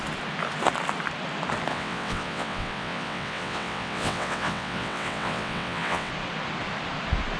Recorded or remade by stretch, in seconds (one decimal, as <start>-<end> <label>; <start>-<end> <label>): 0.0-1.7 recorded; 1.7-6.1 remade; 6.1-7.4 recorded